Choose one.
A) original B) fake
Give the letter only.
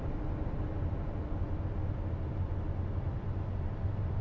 A